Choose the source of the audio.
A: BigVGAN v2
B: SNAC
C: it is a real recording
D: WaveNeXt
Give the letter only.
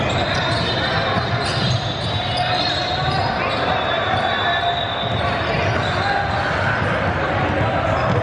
C